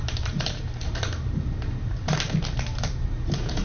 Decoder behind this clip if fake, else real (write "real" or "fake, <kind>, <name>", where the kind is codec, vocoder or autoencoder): fake, vocoder, BigVGAN v2